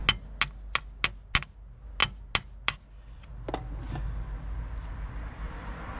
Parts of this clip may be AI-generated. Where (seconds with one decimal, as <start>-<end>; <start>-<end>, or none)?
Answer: none